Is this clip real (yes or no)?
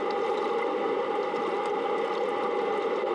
yes